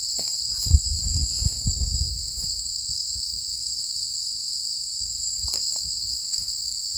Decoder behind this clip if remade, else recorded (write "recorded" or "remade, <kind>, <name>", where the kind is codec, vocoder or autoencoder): remade, codec, SNAC